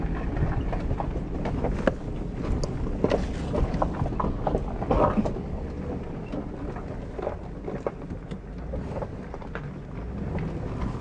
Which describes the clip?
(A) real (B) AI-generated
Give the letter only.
A